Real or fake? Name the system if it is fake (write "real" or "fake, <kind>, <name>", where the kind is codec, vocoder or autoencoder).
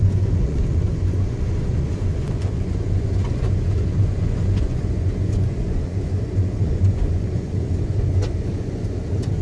fake, vocoder, Vocos